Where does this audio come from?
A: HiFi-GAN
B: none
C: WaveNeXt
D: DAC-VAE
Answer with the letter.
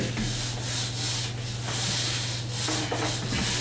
B